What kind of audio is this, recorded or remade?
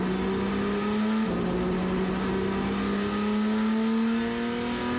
recorded